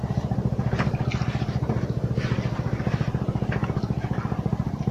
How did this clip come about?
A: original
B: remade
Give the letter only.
A